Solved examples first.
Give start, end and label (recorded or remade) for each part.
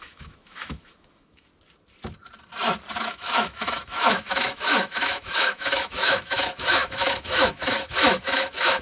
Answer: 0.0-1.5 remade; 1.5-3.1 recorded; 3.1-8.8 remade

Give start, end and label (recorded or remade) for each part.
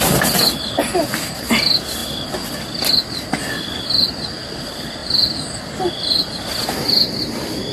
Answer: 0.0-5.0 recorded; 5.0-5.9 remade; 5.9-7.7 recorded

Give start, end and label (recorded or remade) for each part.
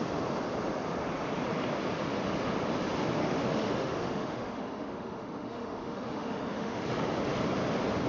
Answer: 0.0-3.2 recorded; 3.2-6.8 remade; 6.8-8.1 recorded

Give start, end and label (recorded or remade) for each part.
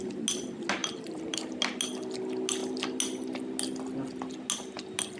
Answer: 0.0-0.8 recorded; 0.8-1.5 remade; 1.5-5.2 recorded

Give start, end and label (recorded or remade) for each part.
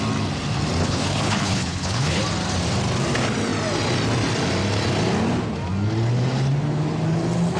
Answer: 0.0-0.8 recorded; 0.8-2.2 remade; 2.2-7.6 recorded